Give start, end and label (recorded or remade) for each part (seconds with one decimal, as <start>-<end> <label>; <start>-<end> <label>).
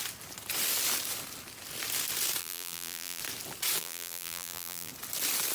0.0-2.4 recorded; 2.4-3.2 remade; 3.2-3.8 recorded; 3.8-4.9 remade; 4.9-5.5 recorded